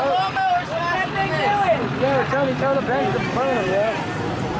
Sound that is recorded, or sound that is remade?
recorded